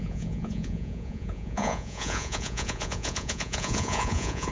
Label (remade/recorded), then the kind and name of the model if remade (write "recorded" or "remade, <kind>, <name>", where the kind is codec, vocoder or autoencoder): remade, vocoder, Vocos